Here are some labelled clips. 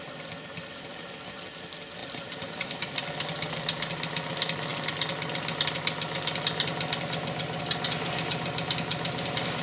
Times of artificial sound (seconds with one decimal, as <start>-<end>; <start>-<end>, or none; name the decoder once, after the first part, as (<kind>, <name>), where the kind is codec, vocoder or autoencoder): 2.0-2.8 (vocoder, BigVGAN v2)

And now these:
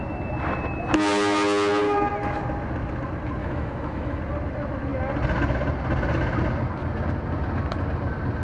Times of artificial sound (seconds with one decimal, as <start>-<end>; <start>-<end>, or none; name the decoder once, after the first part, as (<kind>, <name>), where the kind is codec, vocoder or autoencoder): 3.4-4.2 (autoencoder, DAC-VAE)

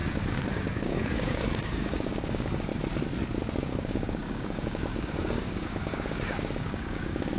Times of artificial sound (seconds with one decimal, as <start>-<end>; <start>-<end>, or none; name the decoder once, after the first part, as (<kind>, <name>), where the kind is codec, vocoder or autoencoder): 0.0-2.7 (codec, DAC); 3.6-7.4

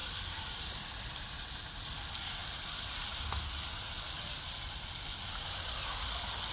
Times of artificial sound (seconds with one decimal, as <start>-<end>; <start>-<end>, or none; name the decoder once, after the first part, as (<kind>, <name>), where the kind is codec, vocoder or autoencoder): none

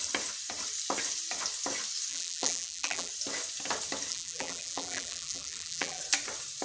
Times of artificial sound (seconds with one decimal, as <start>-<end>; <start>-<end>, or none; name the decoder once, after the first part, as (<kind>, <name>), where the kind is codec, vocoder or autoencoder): 2.1-3.1 (vocoder, BigVGAN v2); 4.1-6.0

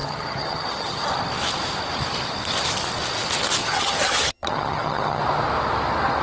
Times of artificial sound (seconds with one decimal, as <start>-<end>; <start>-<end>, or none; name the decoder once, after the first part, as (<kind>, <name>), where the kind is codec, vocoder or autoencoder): 0.0-1.1 (vocoder, HiFi-GAN); 3.6-5.2